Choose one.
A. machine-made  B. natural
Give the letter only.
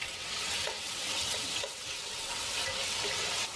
A